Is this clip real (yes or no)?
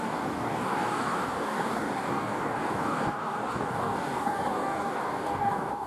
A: no